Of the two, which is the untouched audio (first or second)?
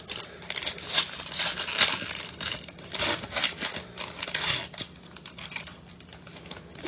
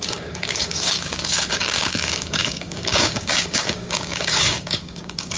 first